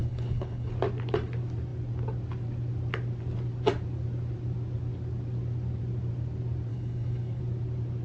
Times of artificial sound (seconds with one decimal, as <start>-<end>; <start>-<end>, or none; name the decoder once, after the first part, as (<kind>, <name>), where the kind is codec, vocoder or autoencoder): 0.0-0.7 (codec, HILCodec); 6.7-7.4